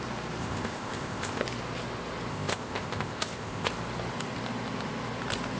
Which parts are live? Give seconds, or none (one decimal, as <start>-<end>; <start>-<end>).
0.0-0.4; 1.4-2.3; 3.7-5.6